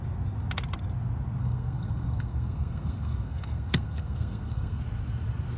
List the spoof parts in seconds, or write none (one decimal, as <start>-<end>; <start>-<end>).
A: 1.4-4.8